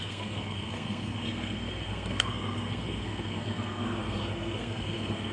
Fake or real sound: fake